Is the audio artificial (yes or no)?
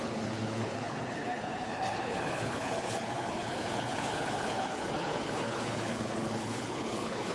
yes